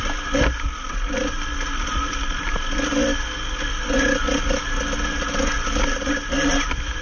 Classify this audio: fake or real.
real